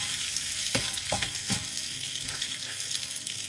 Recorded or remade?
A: remade